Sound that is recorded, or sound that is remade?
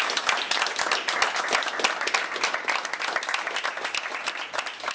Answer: recorded